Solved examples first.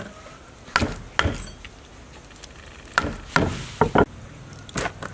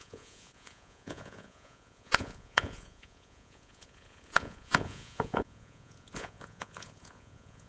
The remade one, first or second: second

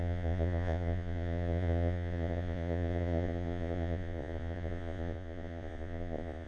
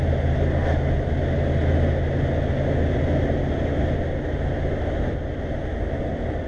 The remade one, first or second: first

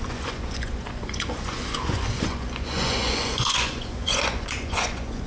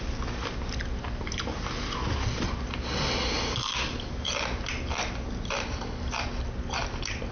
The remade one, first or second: first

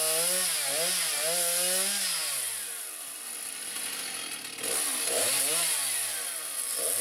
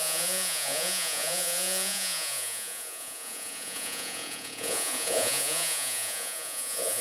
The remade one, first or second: second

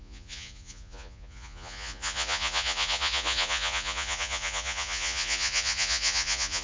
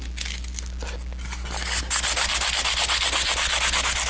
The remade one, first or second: first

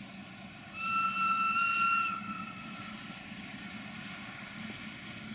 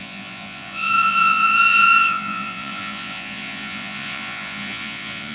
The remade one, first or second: second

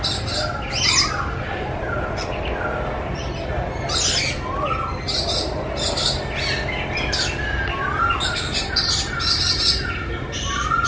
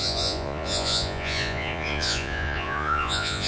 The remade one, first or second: second